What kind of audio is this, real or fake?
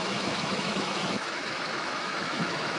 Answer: fake